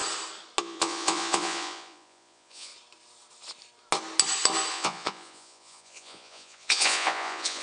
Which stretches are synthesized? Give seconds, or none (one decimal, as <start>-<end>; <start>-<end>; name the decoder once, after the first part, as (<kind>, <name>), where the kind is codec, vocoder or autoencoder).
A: 0.6-2.7 (vocoder, Vocos); 4.7-7.6